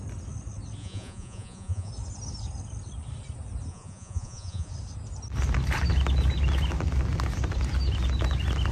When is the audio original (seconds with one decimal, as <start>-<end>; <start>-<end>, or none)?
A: 0.0-0.8; 1.9-3.7; 4.7-8.7